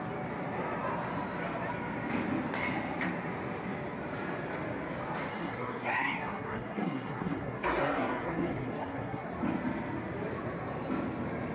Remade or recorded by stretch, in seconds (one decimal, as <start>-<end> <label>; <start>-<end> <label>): 0.0-5.3 recorded; 5.3-9.3 remade; 9.3-11.5 recorded